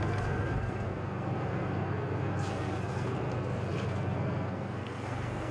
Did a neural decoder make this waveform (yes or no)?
yes